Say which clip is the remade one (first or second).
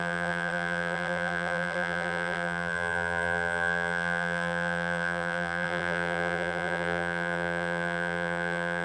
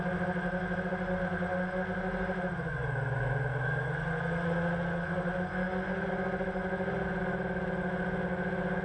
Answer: first